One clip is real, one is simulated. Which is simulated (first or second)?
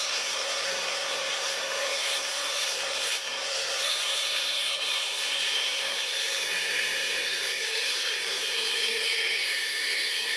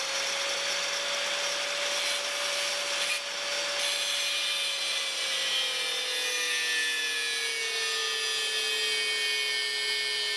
first